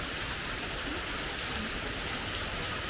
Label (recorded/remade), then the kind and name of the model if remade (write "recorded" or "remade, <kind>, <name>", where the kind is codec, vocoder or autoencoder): recorded